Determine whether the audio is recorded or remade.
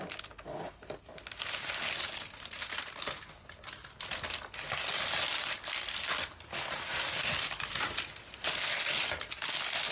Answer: recorded